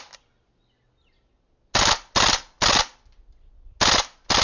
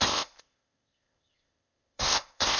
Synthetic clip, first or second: second